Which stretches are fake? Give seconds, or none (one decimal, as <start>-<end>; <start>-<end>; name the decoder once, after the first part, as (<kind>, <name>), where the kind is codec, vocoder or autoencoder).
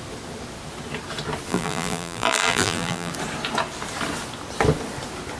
1.5-3.1 (vocoder, BigVGAN v2)